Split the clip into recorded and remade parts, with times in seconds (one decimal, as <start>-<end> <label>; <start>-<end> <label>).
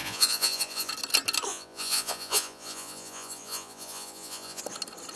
0.0-0.9 remade; 0.9-1.5 recorded; 1.5-4.6 remade; 4.6-5.2 recorded